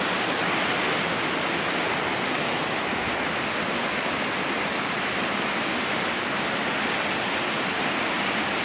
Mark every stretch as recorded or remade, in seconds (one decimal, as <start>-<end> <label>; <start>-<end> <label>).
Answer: 0.0-8.6 recorded